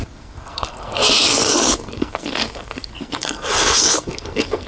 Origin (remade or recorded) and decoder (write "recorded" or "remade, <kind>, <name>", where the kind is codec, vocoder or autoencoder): remade, codec, SNAC